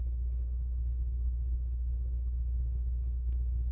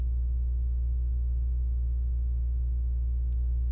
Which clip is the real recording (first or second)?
second